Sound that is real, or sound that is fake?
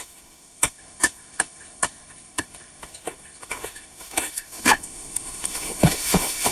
fake